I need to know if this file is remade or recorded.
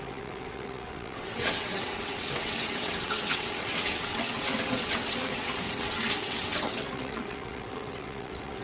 remade